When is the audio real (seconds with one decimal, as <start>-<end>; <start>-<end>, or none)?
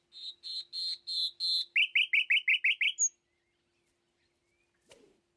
0.0-5.4